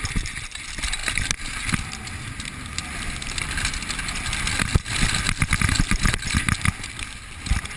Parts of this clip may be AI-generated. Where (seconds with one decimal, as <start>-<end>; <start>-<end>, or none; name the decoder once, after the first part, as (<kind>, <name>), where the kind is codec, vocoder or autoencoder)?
none